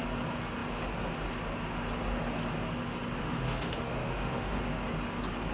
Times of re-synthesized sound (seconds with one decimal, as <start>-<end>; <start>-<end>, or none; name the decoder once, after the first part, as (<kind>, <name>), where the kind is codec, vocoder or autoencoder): 3.2-4.6 (autoencoder, DAC-VAE)